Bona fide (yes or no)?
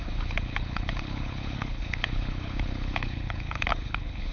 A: no